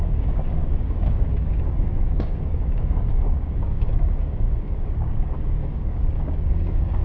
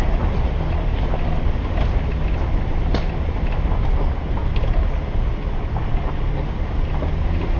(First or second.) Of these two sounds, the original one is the second